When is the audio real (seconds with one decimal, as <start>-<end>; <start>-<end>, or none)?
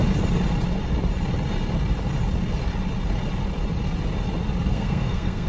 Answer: 0.0-4.7